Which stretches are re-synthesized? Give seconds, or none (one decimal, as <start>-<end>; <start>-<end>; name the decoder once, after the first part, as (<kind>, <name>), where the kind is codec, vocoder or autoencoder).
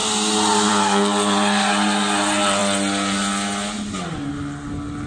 none